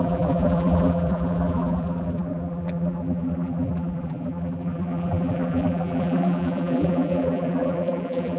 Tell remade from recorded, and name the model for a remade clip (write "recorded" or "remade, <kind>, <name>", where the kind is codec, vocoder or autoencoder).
remade, vocoder, BigVGAN v2